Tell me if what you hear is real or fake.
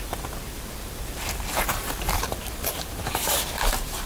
fake